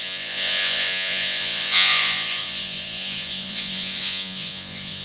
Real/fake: fake